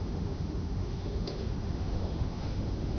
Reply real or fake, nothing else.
fake